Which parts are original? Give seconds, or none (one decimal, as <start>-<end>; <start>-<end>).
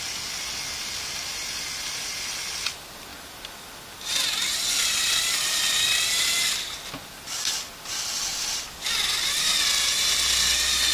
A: 0.0-10.9